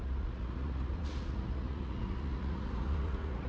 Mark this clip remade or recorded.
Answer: remade